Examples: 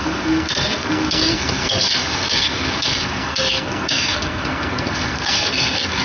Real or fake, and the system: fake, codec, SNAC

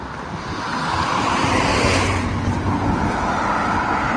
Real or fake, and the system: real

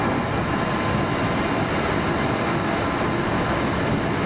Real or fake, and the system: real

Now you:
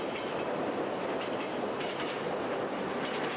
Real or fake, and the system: real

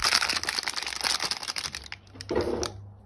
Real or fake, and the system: real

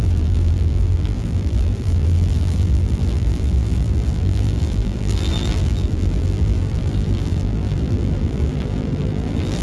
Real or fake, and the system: fake, vocoder, BigVGAN v2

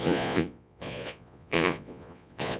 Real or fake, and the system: fake, vocoder, Vocos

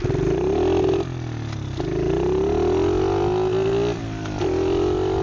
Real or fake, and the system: real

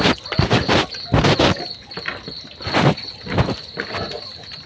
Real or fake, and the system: real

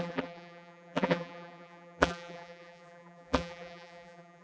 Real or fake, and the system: fake, vocoder, BigVGAN v2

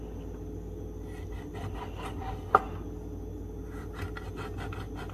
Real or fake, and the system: real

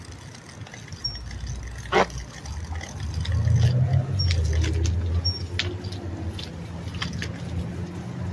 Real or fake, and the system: real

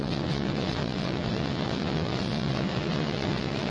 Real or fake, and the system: fake, vocoder, WaveNeXt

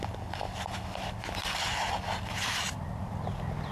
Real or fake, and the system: real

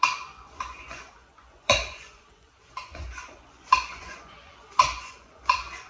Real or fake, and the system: fake, vocoder, Vocos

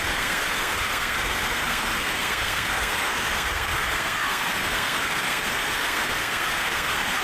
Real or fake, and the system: fake, codec, SNAC